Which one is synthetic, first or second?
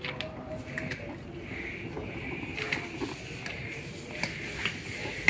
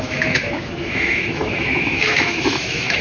second